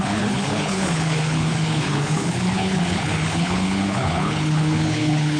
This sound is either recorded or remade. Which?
remade